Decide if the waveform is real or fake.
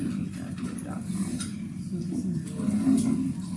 real